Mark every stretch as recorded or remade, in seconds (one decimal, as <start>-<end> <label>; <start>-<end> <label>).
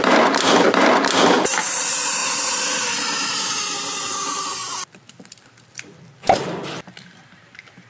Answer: 0.0-2.2 remade; 2.2-4.1 recorded; 4.1-7.9 remade